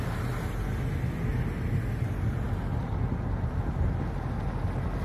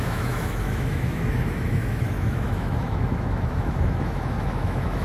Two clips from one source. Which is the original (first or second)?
first